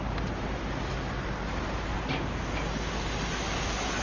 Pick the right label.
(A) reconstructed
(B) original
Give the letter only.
B